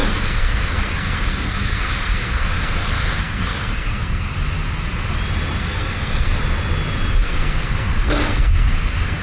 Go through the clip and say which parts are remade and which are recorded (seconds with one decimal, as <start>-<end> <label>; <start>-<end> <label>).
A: 0.0-4.3 remade; 4.3-5.6 recorded; 5.6-6.3 remade; 6.3-7.2 recorded; 7.2-9.2 remade